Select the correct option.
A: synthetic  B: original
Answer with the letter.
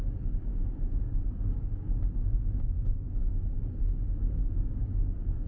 A